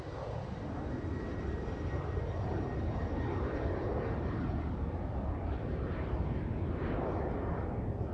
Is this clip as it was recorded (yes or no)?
yes